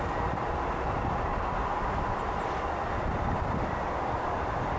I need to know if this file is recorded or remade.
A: recorded